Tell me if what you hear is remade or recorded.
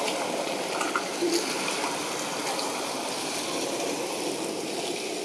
recorded